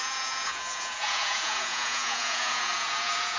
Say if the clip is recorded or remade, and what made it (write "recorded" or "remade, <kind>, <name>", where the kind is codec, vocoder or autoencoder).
remade, vocoder, Vocos